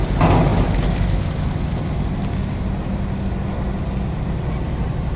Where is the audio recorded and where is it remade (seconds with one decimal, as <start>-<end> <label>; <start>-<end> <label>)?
0.0-5.2 recorded